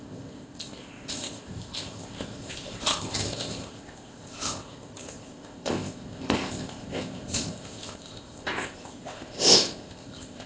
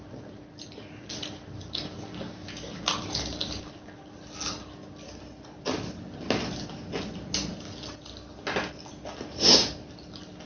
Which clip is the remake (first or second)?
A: first